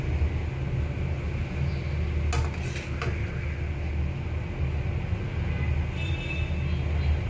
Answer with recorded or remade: recorded